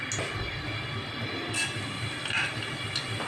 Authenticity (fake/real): real